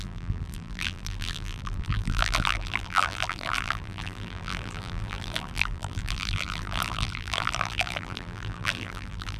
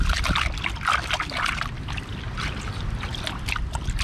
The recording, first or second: second